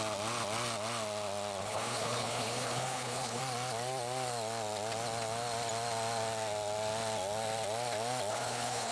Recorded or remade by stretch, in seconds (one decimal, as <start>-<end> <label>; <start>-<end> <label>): 0.0-1.6 recorded; 1.6-3.4 remade; 3.4-8.3 recorded; 8.3-8.9 remade